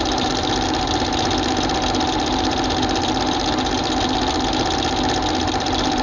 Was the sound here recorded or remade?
recorded